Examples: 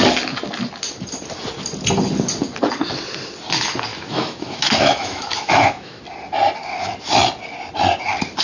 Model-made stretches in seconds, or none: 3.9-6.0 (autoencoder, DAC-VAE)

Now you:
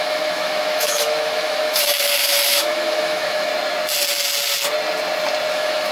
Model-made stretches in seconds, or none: 0.0-3.5 (autoencoder, DAC-VAE); 5.5-5.9

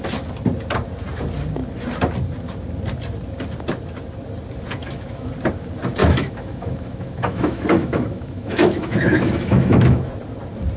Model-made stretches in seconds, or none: 4.8-5.3 (autoencoder, DAC-VAE); 6.0-10.1

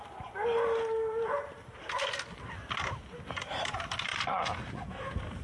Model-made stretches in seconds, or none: none